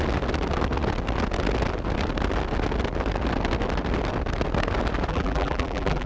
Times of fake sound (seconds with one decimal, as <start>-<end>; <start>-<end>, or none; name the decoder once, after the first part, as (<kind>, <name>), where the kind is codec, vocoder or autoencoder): 5.1-6.1 (vocoder, BigVGAN v2)